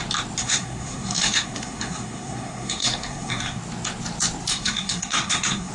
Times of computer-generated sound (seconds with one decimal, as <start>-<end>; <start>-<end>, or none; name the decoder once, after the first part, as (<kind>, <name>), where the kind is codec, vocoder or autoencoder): 0.4-3.6 (codec, SNAC); 4.5-5.7